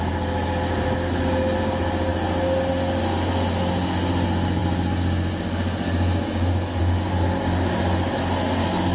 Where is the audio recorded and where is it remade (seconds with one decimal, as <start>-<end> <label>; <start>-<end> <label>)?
0.0-8.9 recorded

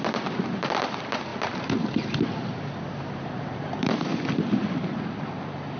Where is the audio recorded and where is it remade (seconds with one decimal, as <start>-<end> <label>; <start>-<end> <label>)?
0.0-1.3 remade; 1.3-3.0 recorded; 3.0-4.1 remade; 4.1-4.6 recorded; 4.6-5.8 remade

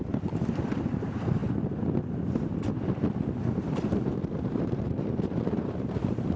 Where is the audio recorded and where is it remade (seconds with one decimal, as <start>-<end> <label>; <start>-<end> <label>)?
0.0-0.7 recorded; 0.7-1.4 remade; 1.4-3.7 recorded; 3.7-6.4 remade

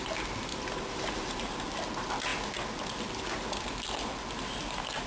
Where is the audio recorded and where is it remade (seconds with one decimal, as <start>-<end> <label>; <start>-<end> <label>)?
0.0-0.5 recorded; 0.5-1.5 remade; 1.5-5.1 recorded

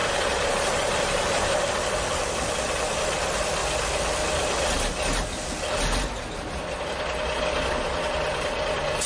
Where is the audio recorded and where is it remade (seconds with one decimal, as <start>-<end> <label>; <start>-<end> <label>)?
0.0-1.6 remade; 1.6-9.1 recorded

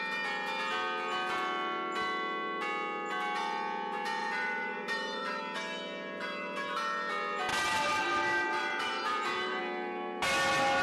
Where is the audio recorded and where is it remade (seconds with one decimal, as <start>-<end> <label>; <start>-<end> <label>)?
0.0-4.2 recorded; 4.2-5.4 remade; 5.4-7.5 recorded; 7.5-9.6 remade; 9.6-10.8 recorded